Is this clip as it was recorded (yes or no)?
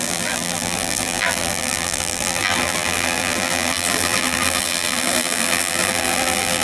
no